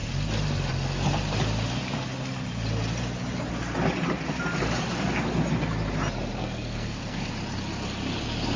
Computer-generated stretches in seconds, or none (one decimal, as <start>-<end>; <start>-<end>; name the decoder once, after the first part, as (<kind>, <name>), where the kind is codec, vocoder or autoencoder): 6.4-7.3 (codec, SNAC)